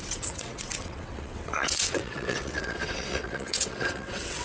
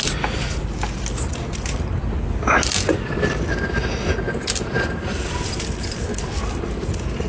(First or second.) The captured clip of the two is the second